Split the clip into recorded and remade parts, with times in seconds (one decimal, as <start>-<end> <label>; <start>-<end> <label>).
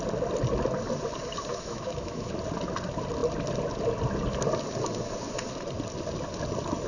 0.0-1.5 recorded; 1.5-2.3 remade; 2.3-6.9 recorded